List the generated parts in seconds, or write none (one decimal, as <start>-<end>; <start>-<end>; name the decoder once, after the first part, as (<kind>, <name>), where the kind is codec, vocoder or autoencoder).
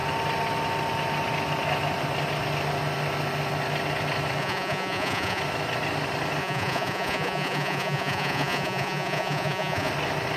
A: 4.4-5.4 (vocoder, Vocos); 6.4-9.9